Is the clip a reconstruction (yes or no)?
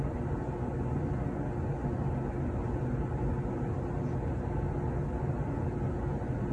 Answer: no